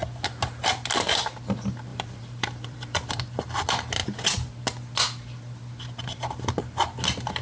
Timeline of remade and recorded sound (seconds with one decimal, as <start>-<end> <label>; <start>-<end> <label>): 0.0-1.9 recorded; 1.9-3.2 remade; 3.2-7.4 recorded